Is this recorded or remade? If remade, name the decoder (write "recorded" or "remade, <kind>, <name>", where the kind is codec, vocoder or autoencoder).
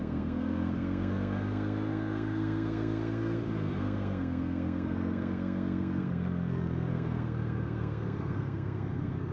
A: remade, codec, SNAC